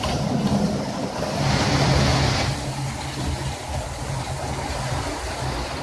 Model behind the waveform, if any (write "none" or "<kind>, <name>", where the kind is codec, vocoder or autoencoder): none